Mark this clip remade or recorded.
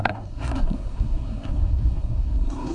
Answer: remade